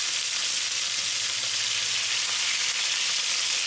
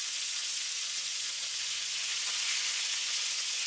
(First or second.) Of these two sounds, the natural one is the first